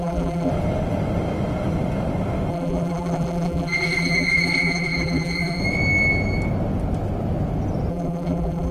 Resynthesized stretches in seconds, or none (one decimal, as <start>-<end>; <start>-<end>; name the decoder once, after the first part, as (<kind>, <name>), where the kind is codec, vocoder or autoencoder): 0.0-0.5 (vocoder, BigVGAN v2); 2.5-5.6; 7.9-8.7